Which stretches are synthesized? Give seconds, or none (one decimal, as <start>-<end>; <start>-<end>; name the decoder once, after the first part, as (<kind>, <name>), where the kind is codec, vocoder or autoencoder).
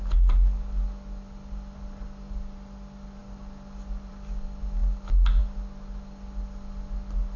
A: none